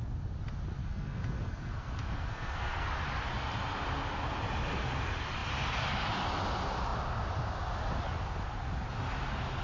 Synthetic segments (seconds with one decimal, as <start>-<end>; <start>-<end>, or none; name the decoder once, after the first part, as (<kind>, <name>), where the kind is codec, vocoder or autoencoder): 0.8-2.9 (codec, SNAC)